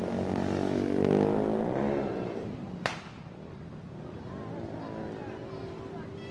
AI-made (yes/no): no